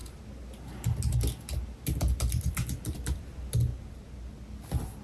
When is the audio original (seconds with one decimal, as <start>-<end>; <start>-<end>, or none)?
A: 0.0-5.0